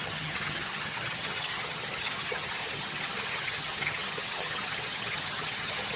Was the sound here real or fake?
fake